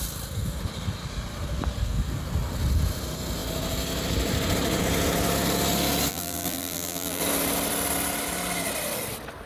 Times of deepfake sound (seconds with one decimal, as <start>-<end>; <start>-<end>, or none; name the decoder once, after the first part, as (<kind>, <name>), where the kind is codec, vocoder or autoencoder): 6.1-7.2 (vocoder, BigVGAN v2)